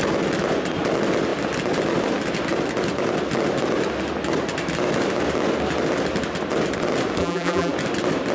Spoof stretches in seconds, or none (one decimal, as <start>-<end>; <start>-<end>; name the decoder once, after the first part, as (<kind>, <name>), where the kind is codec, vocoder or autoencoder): 7.2-7.7 (vocoder, BigVGAN v2)